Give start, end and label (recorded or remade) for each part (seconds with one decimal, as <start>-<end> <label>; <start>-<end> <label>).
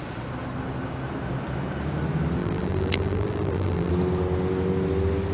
0.0-2.4 recorded; 2.4-3.9 remade; 3.9-5.3 recorded